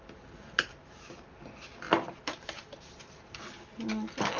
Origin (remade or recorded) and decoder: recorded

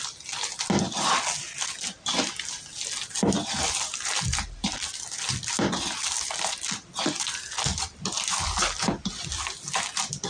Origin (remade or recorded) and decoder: recorded